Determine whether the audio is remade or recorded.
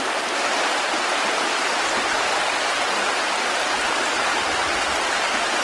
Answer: recorded